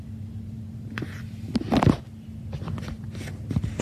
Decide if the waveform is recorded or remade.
recorded